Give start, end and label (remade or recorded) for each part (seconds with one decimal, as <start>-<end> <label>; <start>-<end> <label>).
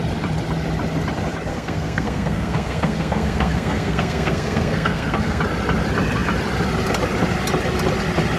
0.0-1.5 recorded; 1.5-5.4 remade; 5.4-8.4 recorded